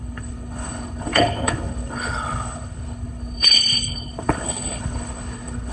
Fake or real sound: fake